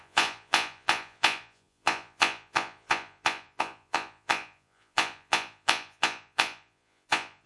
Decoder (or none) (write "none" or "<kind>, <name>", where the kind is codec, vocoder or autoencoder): vocoder, Vocos